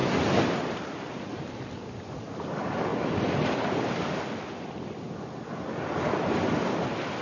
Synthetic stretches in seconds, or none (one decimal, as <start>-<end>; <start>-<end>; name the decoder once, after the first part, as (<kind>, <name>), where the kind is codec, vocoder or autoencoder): none

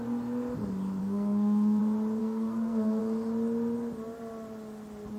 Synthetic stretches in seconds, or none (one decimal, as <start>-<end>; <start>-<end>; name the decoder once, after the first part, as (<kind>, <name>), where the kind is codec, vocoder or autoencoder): 1.0-1.8 (codec, SNAC); 2.2-3.0

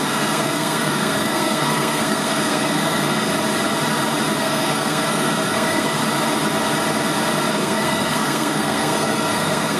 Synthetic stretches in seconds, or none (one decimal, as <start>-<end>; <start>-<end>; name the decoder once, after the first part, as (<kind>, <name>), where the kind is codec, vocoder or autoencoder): 0.0-3.3 (codec, SNAC); 4.4-6.0; 7.5-9.8

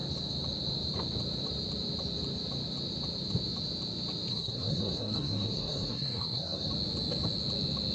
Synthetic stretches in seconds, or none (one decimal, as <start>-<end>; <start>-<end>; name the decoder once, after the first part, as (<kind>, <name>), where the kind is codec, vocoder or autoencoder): 4.3-6.7 (codec, SNAC)

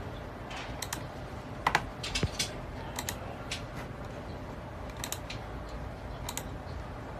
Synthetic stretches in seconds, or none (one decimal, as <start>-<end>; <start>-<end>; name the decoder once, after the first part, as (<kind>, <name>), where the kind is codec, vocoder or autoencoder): none

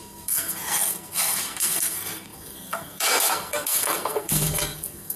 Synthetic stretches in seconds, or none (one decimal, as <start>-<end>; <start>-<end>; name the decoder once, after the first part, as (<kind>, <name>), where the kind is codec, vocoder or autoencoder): 0.0-5.2 (codec, SNAC)

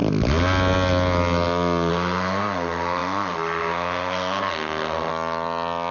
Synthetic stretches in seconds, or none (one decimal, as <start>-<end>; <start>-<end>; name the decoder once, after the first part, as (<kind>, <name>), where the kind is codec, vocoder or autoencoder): 1.9-5.1 (codec, SNAC)

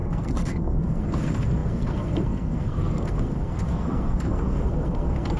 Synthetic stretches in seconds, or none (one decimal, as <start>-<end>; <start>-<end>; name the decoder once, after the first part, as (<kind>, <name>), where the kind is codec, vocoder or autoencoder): 0.0-5.4 (codec, SNAC)